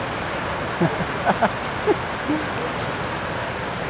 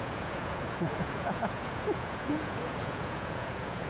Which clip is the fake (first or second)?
second